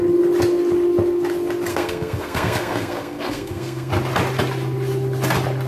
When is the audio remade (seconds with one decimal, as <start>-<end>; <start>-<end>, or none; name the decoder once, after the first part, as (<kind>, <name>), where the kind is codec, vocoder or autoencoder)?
1.7-3.9 (codec, SNAC)